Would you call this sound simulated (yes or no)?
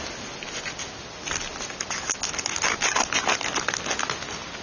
no